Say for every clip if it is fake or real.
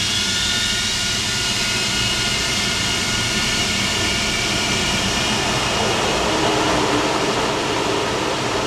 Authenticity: real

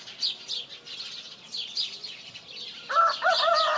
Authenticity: real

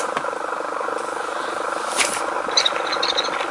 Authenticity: real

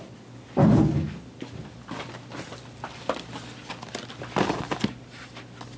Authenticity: real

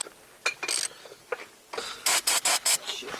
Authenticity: real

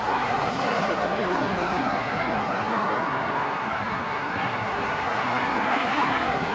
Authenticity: fake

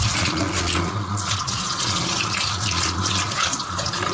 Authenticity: fake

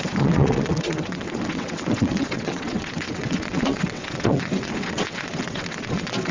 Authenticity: fake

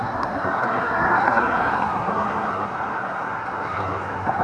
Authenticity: fake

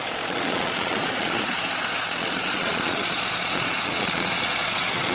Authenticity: fake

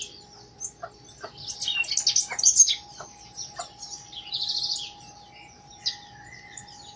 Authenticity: real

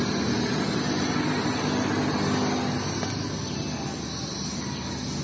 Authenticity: real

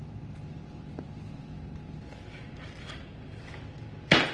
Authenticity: real